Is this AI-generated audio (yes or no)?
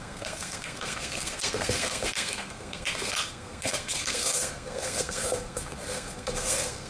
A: yes